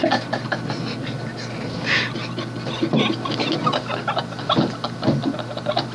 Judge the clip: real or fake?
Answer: real